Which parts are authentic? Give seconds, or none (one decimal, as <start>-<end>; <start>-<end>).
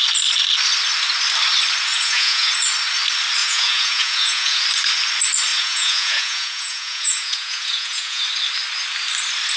0.0-1.9; 2.5-3.4; 4.6-5.5; 8.2-9.6